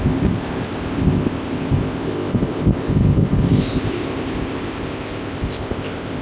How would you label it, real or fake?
fake